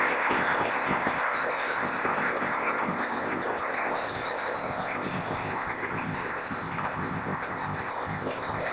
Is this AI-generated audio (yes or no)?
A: yes